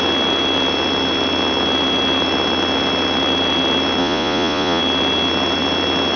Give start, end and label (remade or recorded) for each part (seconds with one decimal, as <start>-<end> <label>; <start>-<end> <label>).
0.0-4.0 recorded; 4.0-4.8 remade; 4.8-6.2 recorded